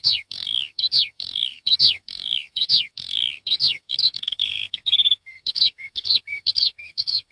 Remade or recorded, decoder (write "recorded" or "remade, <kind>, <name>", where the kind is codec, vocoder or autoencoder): remade, codec, SNAC